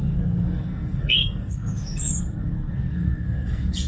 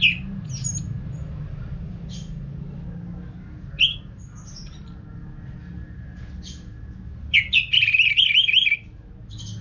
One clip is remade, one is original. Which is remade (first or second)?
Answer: first